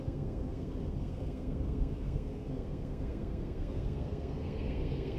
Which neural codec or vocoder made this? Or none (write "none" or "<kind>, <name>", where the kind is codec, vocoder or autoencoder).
codec, SNAC